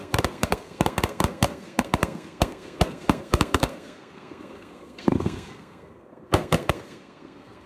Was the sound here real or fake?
fake